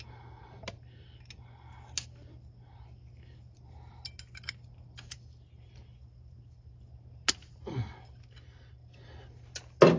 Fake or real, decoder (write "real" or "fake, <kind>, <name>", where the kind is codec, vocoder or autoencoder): real